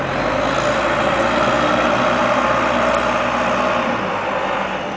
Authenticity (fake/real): real